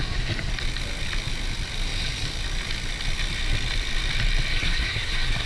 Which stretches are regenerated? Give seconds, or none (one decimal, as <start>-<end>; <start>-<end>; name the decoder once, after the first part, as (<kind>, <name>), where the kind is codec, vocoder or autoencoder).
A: 4.5-5.5 (codec, SNAC)